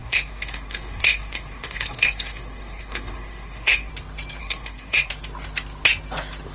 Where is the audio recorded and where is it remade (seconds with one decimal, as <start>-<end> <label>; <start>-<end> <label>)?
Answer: 0.0-3.9 remade; 3.9-4.4 recorded; 4.4-5.1 remade; 5.1-6.5 recorded